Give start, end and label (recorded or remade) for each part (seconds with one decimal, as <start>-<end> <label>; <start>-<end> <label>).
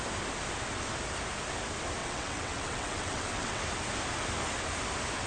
0.0-2.0 recorded; 2.0-3.6 remade; 3.6-5.3 recorded